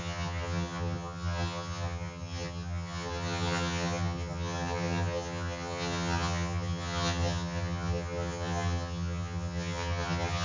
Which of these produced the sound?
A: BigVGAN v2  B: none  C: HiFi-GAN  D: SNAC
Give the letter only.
C